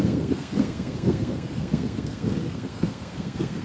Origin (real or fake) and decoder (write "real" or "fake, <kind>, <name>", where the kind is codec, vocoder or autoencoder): fake, codec, SNAC